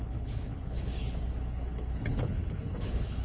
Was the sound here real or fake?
fake